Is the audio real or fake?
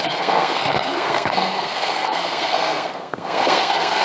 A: fake